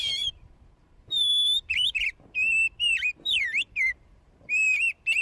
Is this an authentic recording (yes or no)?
no